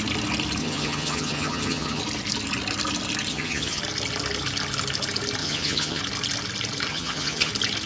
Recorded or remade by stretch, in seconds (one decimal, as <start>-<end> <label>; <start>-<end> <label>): 0.0-0.6 recorded; 0.6-2.0 remade; 2.0-3.3 recorded; 3.3-3.8 remade; 3.8-5.4 recorded; 5.4-6.0 remade; 6.0-6.9 recorded; 6.9-7.5 remade; 7.5-7.9 recorded